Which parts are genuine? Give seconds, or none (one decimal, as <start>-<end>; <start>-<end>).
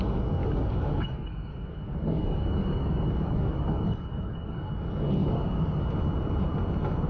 0.0-0.4; 4.7-5.2; 5.8-7.1